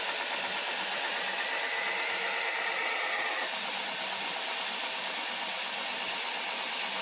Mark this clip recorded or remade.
recorded